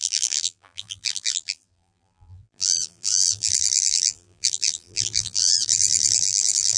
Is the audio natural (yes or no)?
no